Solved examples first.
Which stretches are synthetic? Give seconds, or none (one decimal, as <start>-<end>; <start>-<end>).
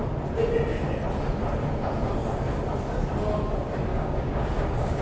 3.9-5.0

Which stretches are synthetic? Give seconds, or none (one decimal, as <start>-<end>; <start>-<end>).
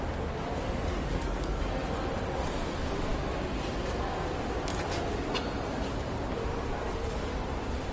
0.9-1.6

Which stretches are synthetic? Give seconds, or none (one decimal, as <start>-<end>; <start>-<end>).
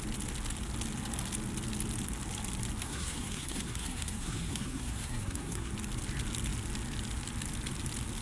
2.8-5.7